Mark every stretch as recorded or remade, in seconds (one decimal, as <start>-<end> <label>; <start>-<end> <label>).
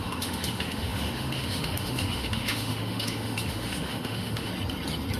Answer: 0.0-4.5 remade; 4.5-5.2 recorded